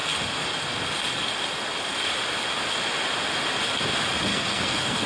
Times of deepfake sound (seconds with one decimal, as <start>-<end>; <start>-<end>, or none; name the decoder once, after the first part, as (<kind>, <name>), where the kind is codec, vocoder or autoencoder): 4.3-5.1 (codec, SNAC)